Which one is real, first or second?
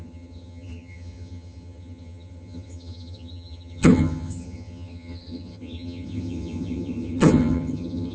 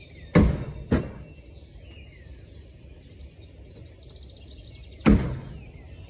second